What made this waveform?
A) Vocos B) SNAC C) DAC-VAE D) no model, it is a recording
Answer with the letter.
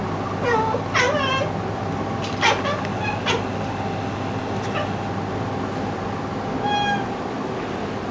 D